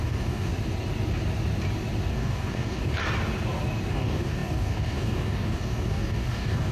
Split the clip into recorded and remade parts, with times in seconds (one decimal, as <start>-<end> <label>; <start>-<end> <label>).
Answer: 0.0-0.5 remade; 0.5-2.1 recorded; 2.1-3.0 remade; 3.0-3.9 recorded; 3.9-6.7 remade